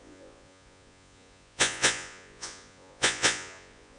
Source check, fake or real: fake